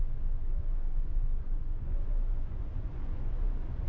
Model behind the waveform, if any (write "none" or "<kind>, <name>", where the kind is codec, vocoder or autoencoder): vocoder, Vocos